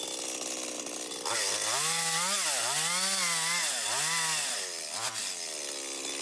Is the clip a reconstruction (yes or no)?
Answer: no